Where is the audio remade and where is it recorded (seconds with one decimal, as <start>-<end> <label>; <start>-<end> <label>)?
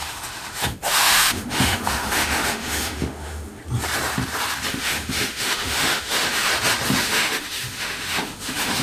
0.0-3.6 remade; 3.6-4.7 recorded; 4.7-6.5 remade; 6.5-7.0 recorded; 7.0-8.8 remade